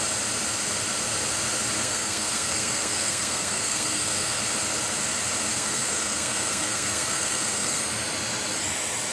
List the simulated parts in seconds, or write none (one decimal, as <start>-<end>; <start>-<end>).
1.8-4.4; 5.5-7.8